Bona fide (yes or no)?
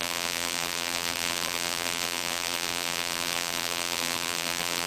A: no